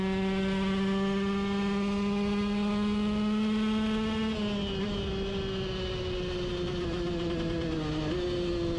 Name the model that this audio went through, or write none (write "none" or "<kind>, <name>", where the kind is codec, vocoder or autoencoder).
none